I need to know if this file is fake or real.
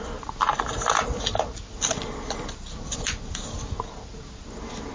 real